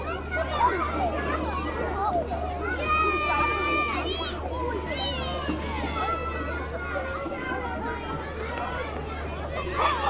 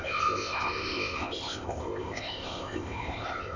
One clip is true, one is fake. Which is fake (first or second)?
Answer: second